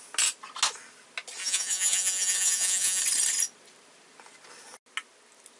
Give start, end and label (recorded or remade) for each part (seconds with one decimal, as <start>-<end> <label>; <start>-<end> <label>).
0.0-1.4 recorded; 1.4-3.0 remade; 3.0-5.6 recorded